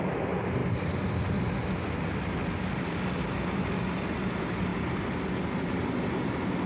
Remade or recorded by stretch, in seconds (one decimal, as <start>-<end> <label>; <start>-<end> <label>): 0.0-6.7 recorded